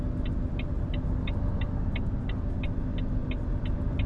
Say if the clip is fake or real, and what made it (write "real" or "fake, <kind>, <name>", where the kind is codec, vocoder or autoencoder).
real